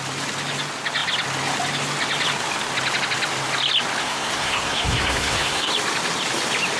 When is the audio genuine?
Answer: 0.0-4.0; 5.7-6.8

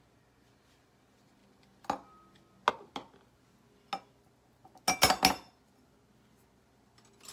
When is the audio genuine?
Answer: 0.0-7.3